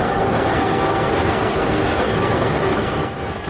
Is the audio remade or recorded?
remade